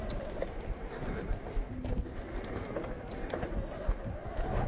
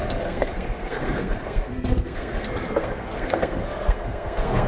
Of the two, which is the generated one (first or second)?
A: second